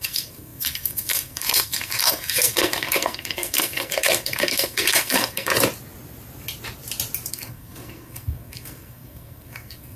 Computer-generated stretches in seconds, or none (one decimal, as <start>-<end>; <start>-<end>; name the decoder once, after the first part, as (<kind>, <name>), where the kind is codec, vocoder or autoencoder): 0.0-5.5 (codec, SNAC); 7.3-10.0